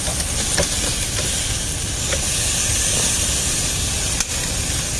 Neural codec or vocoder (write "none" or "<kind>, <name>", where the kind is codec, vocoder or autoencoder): none